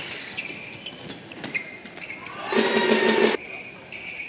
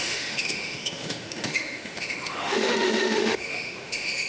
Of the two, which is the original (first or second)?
first